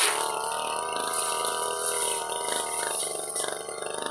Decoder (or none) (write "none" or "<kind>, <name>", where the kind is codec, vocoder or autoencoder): vocoder, BigVGAN v2